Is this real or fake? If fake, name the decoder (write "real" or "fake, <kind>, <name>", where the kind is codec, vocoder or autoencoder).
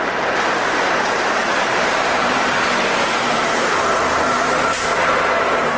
fake, vocoder, BigVGAN v2